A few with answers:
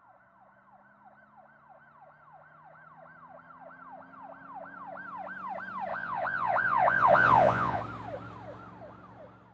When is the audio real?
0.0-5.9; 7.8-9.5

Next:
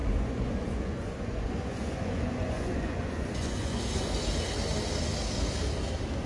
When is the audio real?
3.8-6.3

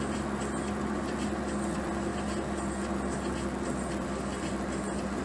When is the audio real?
0.0-5.2

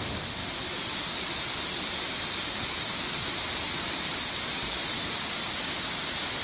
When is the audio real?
0.0-0.4; 4.2-6.4

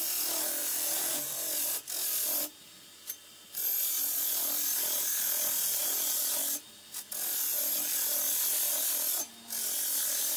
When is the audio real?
0.0-0.6; 1.3-5.8; 6.4-10.4

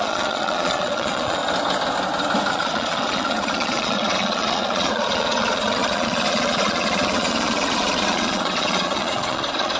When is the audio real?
1.4-2.5

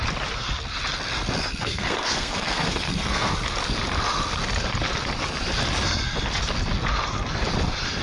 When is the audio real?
0.0-1.6; 3.3-8.0

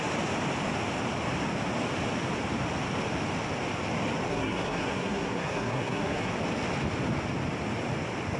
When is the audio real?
0.0-4.3; 6.3-8.4